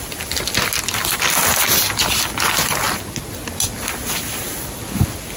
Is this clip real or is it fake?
real